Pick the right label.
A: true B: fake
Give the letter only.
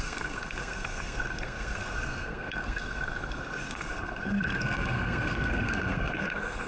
B